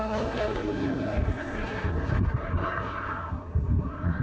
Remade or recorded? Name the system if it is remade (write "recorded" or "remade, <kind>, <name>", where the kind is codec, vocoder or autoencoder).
remade, codec, SNAC